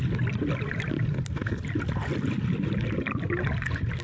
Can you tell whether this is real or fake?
real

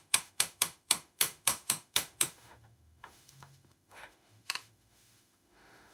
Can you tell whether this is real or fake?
fake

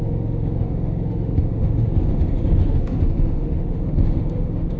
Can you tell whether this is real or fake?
fake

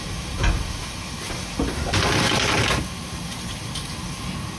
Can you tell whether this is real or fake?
real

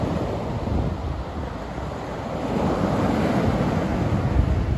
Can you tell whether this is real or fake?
real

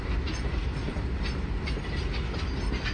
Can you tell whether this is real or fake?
real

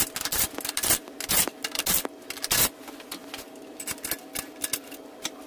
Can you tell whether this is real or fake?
real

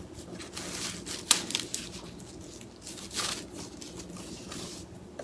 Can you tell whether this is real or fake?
real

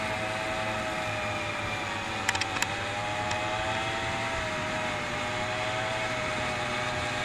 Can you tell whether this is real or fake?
real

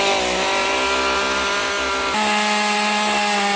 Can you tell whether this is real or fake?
real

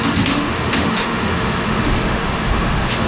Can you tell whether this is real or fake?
fake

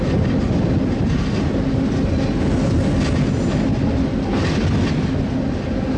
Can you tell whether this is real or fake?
real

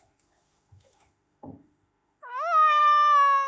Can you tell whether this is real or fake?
fake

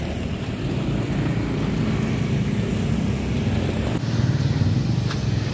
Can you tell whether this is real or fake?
real